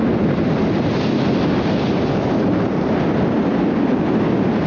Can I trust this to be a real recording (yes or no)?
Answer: yes